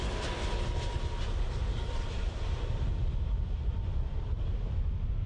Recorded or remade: recorded